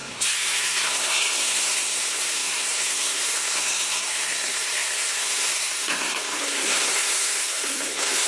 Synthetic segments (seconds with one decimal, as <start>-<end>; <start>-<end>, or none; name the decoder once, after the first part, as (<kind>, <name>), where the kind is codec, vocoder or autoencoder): 0.0-8.3 (codec, SNAC)